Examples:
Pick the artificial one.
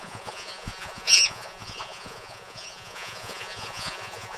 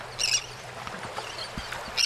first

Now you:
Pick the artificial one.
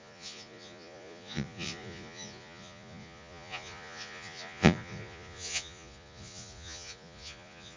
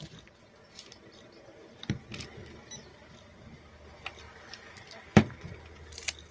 first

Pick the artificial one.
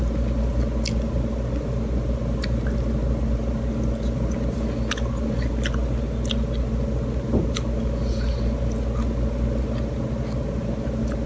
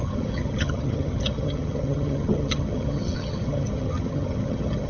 second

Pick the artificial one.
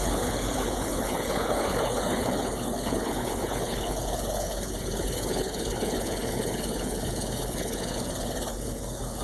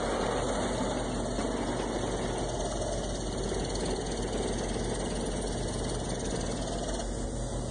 first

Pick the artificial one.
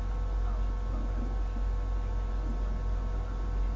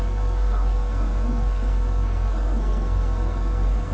second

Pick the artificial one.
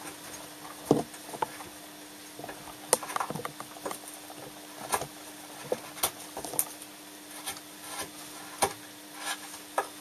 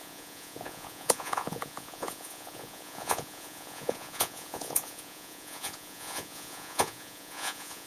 second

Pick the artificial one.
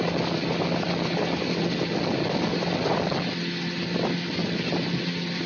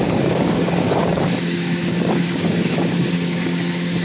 second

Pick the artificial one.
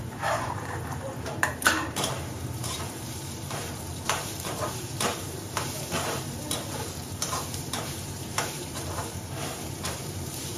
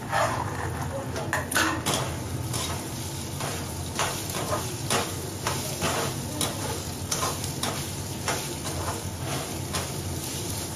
first